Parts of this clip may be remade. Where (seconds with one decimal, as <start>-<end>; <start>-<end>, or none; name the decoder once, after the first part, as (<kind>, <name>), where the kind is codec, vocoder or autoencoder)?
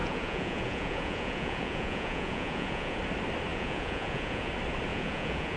0.0-3.0 (vocoder, Vocos); 3.5-4.5; 4.9-5.6